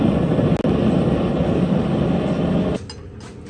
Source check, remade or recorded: recorded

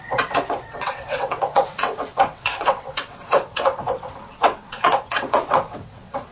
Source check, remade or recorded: remade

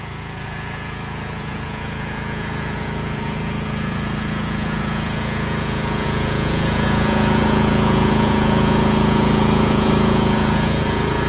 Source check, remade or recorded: remade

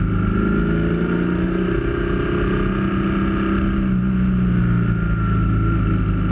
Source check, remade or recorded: recorded